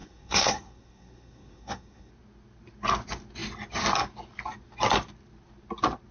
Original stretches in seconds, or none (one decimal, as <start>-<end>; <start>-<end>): 2.1-6.1